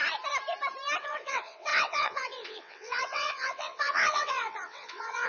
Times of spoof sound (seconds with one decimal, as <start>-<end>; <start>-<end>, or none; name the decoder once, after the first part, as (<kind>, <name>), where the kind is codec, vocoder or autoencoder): 1.0-5.3 (vocoder, WaveNeXt)